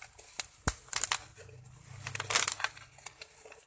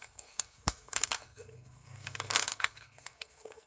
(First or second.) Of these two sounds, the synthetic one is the second